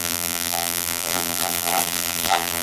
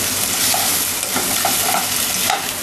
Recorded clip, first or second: second